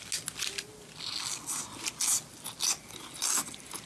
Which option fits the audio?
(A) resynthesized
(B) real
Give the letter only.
B